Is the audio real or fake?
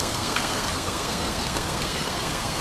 fake